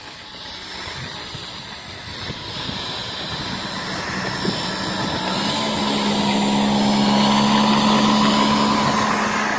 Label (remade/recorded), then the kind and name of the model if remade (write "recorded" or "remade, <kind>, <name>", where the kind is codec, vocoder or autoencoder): recorded